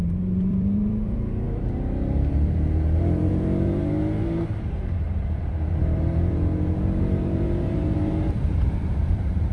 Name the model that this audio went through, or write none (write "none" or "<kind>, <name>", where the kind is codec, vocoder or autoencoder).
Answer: vocoder, BigVGAN v2